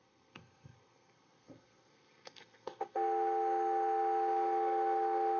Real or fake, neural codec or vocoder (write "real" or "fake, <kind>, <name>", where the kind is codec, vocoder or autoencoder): fake, codec, SNAC